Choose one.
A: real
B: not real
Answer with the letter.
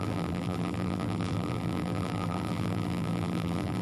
B